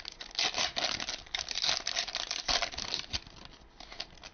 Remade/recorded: recorded